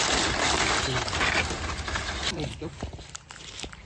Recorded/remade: recorded